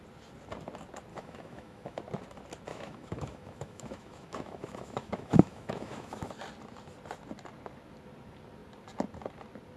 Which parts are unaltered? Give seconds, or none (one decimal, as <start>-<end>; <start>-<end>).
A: 0.0-1.1; 2.0-2.7; 6.3-9.8